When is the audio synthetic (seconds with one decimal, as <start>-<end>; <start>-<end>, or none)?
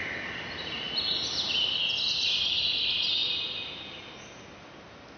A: none